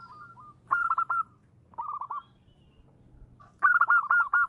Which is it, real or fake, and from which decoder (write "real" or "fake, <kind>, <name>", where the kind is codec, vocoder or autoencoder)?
real